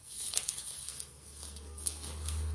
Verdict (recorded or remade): remade